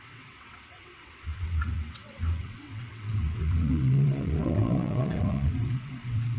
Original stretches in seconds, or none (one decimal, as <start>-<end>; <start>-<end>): none